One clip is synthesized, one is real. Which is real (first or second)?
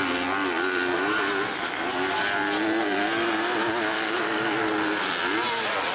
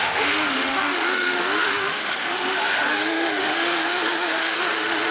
first